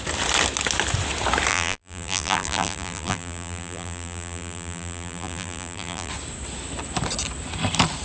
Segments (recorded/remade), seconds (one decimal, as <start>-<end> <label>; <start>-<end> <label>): 0.0-1.5 recorded; 1.5-6.1 remade; 6.1-8.0 recorded